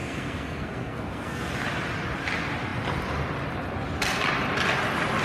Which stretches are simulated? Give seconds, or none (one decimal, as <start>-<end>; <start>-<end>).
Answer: 0.0-1.5